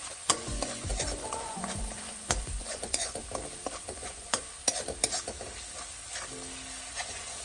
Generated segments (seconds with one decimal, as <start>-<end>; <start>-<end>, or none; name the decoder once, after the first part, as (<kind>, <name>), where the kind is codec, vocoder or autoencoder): 0.0-3.2 (vocoder, Vocos); 3.8-4.6; 6.9-7.4